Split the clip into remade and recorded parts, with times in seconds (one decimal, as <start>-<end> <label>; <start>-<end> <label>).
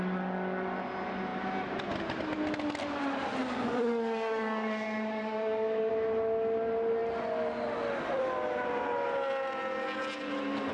0.0-3.4 recorded; 3.4-5.9 remade; 5.9-10.7 recorded